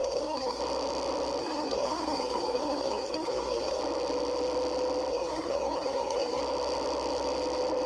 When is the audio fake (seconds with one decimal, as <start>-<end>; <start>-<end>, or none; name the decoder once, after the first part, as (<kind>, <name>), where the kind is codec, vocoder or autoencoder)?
0.0-0.6 (codec, SNAC); 1.4-3.8; 5.1-6.4